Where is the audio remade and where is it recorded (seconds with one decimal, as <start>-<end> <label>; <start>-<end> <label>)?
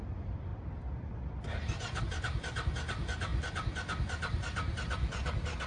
0.0-0.5 remade; 0.5-2.0 recorded; 2.0-5.7 remade